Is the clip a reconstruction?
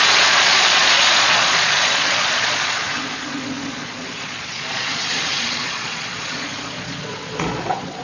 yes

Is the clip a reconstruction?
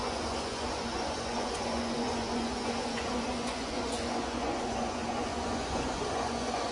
yes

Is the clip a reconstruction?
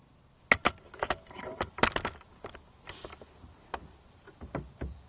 no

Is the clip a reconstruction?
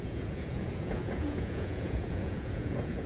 yes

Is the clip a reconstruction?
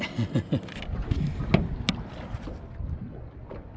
no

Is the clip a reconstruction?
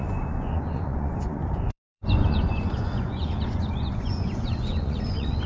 yes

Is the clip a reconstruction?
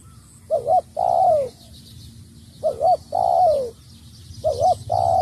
no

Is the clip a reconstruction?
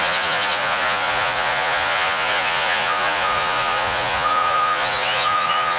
yes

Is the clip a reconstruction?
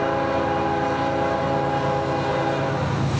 no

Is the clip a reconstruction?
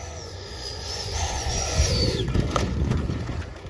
yes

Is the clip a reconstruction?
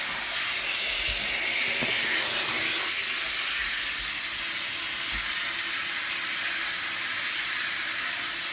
no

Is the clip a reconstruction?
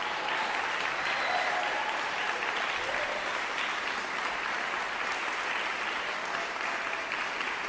no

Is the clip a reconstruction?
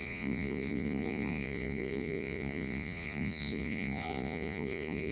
yes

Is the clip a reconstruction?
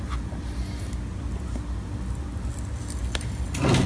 no